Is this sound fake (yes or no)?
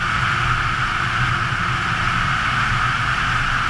no